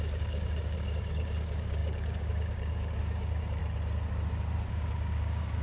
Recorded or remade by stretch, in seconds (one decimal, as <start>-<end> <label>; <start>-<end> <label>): 0.0-3.6 remade; 3.6-4.7 recorded; 4.7-5.6 remade